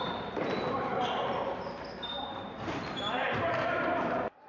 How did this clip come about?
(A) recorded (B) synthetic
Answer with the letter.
B